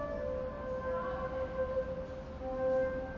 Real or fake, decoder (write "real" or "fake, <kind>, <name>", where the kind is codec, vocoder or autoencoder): real